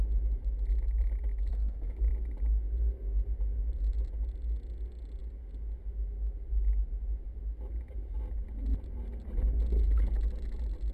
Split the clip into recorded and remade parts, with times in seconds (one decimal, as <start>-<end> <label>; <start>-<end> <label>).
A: 0.0-1.5 recorded; 1.5-2.1 remade; 2.1-10.9 recorded